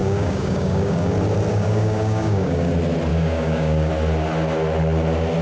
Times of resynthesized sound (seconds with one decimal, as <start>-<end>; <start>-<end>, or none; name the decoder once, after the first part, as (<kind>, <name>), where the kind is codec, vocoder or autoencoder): 0.0-1.1 (codec, DAC); 1.5-2.7; 3.1-3.9